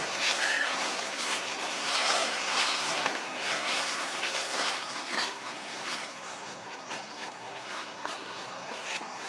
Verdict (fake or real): fake